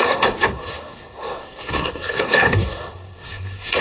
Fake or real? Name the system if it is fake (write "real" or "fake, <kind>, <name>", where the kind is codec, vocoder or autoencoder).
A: fake, codec, SNAC